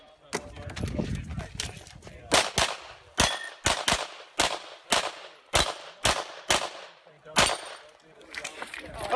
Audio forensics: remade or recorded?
recorded